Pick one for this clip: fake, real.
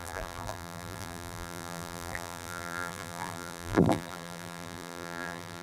fake